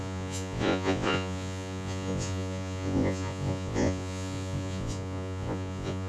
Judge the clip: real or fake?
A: fake